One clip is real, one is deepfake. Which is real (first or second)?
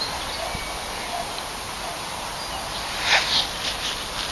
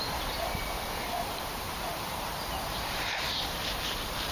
first